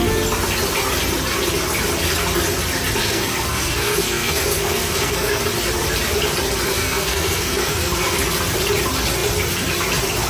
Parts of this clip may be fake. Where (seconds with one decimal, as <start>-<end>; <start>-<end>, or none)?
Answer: 3.0-5.4; 6.7-8.2